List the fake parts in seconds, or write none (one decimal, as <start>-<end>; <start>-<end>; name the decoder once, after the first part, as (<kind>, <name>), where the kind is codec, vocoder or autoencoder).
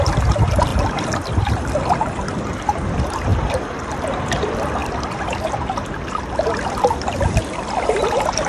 0.0-0.7 (vocoder, BigVGAN v2); 1.3-3.3; 3.9-4.8; 6.8-8.5